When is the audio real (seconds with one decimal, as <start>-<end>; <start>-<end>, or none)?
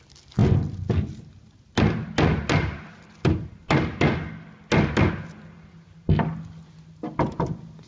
0.0-7.9